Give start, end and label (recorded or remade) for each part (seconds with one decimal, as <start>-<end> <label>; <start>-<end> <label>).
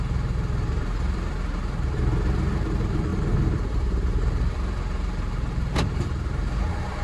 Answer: 0.0-7.0 remade